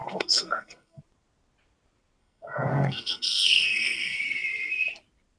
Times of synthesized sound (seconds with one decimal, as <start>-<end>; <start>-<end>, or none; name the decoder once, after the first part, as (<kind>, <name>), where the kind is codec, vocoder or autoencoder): 0.0-1.0 (codec, SNAC); 2.2-4.2